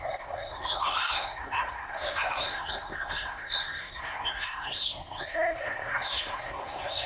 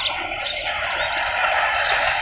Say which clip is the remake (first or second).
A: first